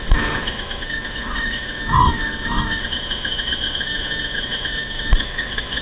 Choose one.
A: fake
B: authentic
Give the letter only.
A